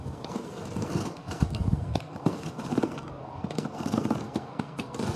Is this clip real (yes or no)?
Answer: no